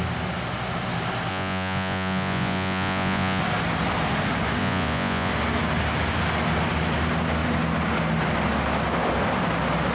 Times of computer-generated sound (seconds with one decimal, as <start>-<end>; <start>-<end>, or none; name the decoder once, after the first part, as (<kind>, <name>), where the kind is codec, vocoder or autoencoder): 1.3-3.4 (vocoder, Vocos); 4.6-5.3